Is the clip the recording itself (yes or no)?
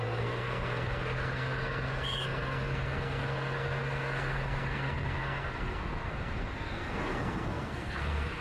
no